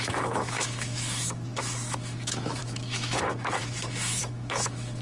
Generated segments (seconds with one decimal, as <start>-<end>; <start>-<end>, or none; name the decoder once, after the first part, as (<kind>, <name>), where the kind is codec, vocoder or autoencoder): 0.0-5.0 (autoencoder, DAC-VAE)